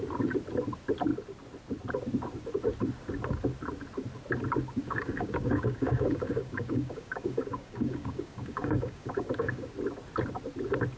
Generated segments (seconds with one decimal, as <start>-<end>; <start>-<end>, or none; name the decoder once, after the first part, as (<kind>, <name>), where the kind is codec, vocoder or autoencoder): 4.8-9.7 (codec, DAC)